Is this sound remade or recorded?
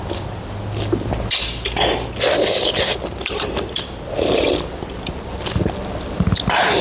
recorded